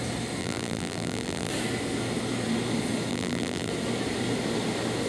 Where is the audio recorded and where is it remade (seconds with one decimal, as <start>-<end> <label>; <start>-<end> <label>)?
0.0-0.4 recorded; 0.4-1.5 remade; 1.5-3.1 recorded; 3.1-3.7 remade; 3.7-5.1 recorded